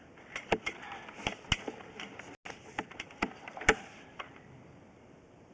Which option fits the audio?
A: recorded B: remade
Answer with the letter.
A